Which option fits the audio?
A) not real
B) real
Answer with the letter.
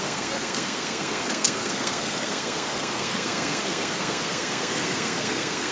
A